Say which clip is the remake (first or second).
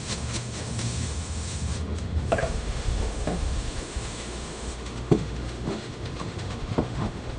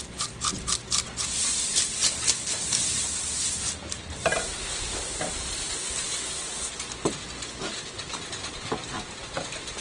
first